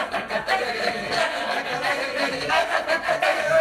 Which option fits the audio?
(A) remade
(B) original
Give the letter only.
A